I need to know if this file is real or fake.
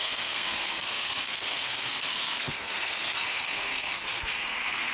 fake